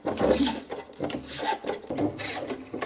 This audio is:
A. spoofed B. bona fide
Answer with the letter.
B